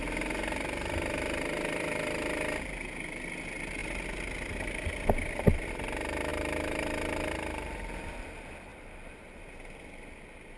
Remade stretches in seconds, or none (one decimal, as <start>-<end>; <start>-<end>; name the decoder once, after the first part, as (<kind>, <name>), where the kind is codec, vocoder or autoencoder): none